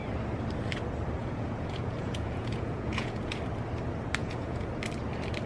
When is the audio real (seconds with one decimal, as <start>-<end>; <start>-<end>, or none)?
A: 0.0-1.2; 3.3-4.2; 4.7-5.5